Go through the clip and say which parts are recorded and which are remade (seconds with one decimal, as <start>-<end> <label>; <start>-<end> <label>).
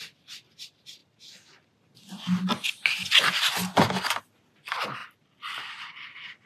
0.0-5.0 recorded; 5.0-5.9 remade; 5.9-6.5 recorded